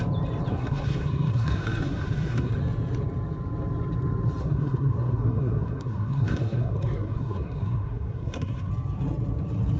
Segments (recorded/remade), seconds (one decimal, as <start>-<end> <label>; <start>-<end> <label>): 0.0-0.5 recorded; 0.5-2.5 remade; 2.5-4.4 recorded; 4.4-8.7 remade; 8.7-9.8 recorded